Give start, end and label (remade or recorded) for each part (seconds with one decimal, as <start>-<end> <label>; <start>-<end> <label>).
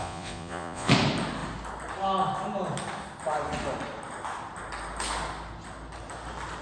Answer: 0.0-0.9 remade; 0.9-6.6 recorded